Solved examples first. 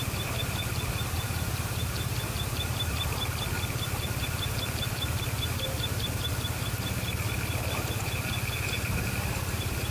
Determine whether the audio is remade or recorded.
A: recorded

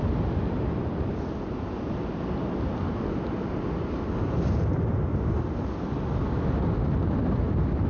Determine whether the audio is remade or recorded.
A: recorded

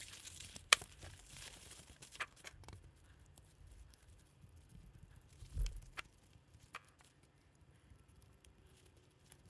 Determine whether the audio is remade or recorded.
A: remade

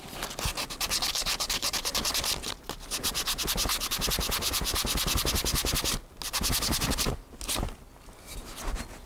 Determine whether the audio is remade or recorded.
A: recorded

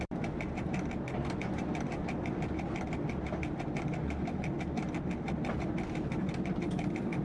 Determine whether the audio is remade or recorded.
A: recorded